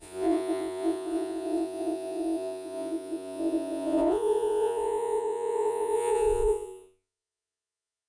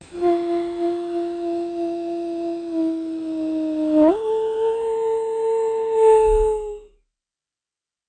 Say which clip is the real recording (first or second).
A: second